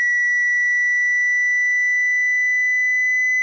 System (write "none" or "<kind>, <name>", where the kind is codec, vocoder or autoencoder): none